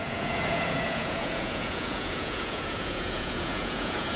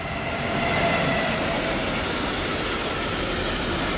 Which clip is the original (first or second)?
second